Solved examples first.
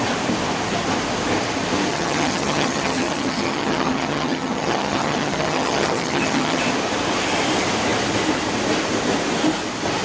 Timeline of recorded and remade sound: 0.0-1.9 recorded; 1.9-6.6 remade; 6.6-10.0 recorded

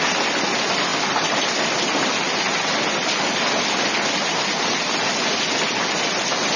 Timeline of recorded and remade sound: 0.0-6.6 recorded

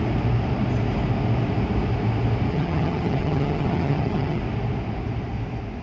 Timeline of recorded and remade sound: 0.0-2.5 recorded; 2.5-4.4 remade; 4.4-5.8 recorded

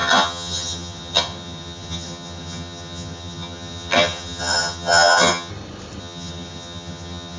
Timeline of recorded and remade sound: 0.0-5.5 remade; 5.5-6.0 recorded; 6.0-7.4 remade

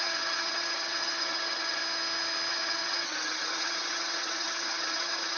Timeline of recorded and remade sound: 0.0-1.8 remade; 1.8-2.5 recorded; 2.5-5.4 remade

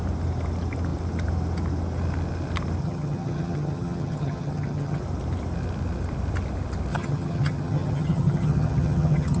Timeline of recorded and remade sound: 0.0-2.8 recorded; 2.8-5.0 remade; 5.0-6.9 recorded; 6.9-9.4 remade

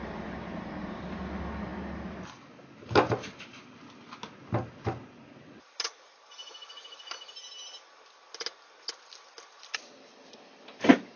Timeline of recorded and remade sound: 0.0-11.2 recorded